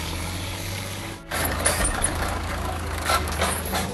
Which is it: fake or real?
fake